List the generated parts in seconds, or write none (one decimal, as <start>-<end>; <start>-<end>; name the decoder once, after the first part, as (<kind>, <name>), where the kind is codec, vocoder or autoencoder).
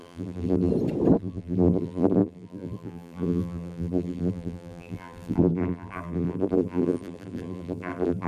0.0-0.7 (vocoder, BigVGAN v2); 1.2-8.3